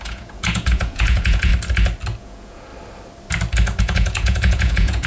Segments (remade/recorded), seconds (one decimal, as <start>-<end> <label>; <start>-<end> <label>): 0.0-1.5 remade; 1.5-2.2 recorded; 2.2-2.7 remade; 2.7-3.8 recorded; 3.8-5.1 remade